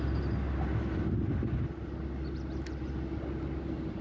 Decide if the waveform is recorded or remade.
recorded